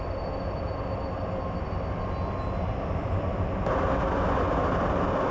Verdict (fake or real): real